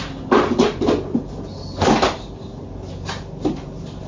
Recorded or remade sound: recorded